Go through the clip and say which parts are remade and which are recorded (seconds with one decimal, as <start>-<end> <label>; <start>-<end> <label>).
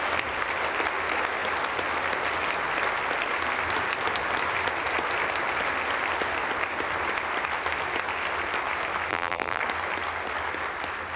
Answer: 0.0-9.1 recorded; 9.1-9.6 remade; 9.6-11.2 recorded